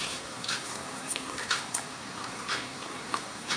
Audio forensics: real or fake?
fake